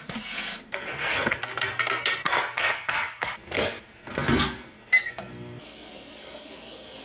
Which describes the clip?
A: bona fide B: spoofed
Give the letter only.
B